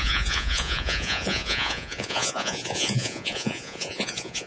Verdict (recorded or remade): remade